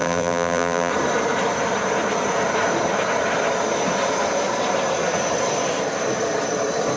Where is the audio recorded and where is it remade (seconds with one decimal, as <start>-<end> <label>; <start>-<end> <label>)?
0.0-0.9 remade; 0.9-7.0 recorded